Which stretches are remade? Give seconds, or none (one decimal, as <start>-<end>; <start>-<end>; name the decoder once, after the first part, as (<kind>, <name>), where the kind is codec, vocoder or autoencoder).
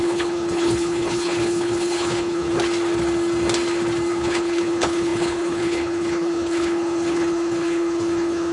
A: 0.0-2.5 (codec, HILCodec); 4.1-8.5